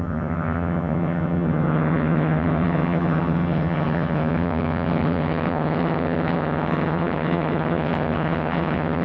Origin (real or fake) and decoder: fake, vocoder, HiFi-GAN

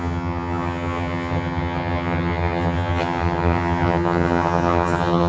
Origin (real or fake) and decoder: fake, vocoder, HiFi-GAN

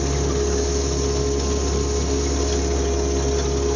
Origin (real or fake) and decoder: real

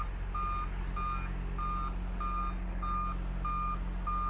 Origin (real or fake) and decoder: real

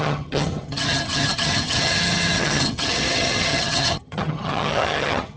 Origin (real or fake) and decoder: fake, vocoder, HiFi-GAN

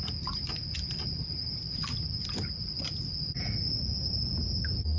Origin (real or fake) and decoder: real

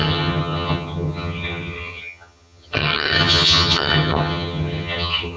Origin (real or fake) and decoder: fake, vocoder, HiFi-GAN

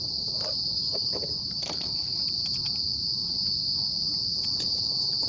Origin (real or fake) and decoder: real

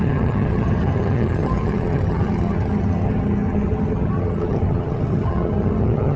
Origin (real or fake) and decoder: fake, vocoder, HiFi-GAN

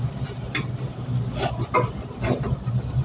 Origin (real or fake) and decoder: real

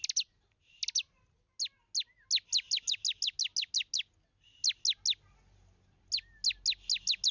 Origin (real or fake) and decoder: real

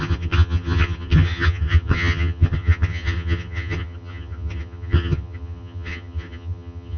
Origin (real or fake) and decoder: fake, vocoder, HiFi-GAN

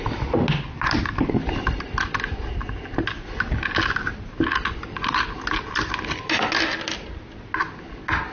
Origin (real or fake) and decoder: real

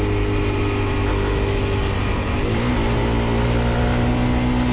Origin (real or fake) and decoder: real